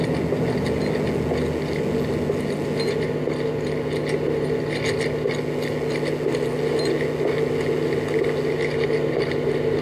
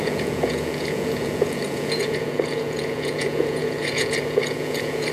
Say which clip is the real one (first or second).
first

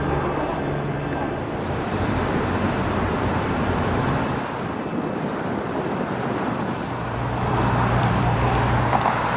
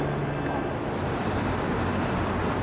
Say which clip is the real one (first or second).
second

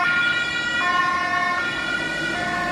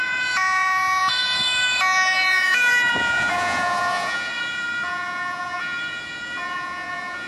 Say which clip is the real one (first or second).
first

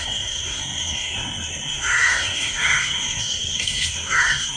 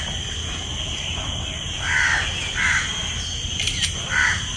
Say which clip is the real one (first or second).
second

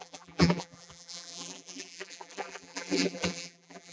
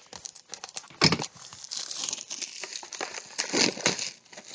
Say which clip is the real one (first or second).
second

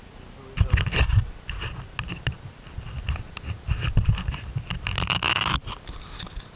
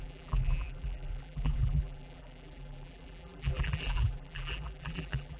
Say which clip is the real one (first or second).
first